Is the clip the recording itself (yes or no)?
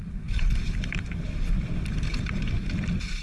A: yes